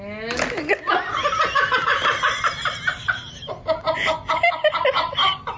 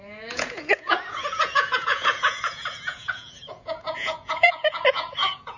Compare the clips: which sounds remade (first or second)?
second